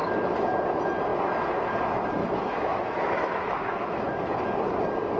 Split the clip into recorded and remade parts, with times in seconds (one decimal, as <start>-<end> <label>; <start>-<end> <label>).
0.0-2.2 recorded; 2.2-4.2 remade; 4.2-5.2 recorded